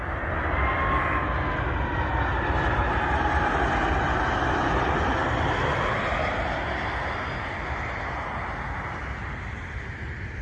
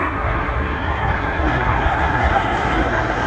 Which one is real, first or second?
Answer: first